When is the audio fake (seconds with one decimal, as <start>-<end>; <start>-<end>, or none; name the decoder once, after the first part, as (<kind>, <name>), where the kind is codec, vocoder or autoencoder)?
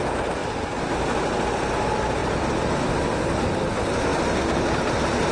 none